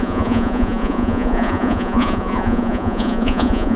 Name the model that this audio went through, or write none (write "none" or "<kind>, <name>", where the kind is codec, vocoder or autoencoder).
vocoder, Vocos